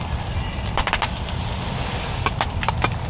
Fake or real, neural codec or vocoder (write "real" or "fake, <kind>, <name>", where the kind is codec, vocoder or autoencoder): real